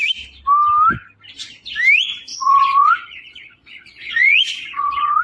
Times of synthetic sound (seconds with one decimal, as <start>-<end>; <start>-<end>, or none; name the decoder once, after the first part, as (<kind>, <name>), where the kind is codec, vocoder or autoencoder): 2.3-5.2 (vocoder, Vocos)